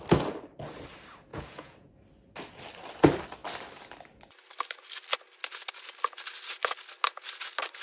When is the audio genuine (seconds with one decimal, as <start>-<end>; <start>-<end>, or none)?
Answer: 0.0-1.3; 1.9-7.8